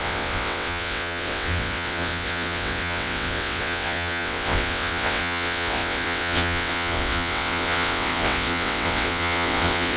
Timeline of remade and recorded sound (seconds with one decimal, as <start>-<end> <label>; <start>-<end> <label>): 0.0-10.0 remade